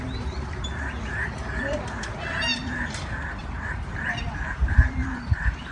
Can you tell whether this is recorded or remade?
remade